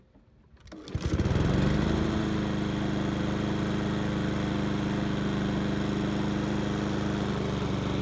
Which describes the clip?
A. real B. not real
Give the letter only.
A